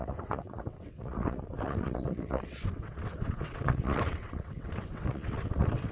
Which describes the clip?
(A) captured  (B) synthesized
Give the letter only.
B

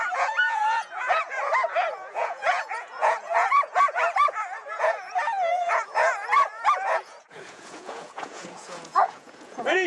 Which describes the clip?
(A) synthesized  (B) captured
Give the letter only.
A